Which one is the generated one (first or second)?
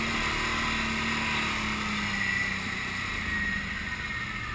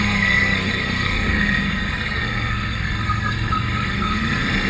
second